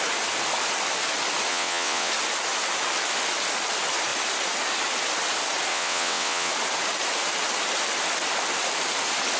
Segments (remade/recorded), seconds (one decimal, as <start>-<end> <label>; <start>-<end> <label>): 0.0-1.5 recorded; 1.5-2.1 remade; 2.1-5.7 recorded; 5.7-6.5 remade; 6.5-9.4 recorded